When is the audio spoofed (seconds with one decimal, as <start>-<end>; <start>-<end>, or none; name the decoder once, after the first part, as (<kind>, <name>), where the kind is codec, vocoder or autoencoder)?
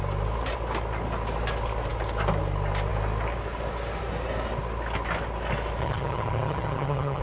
5.8-7.2 (vocoder, HiFi-GAN)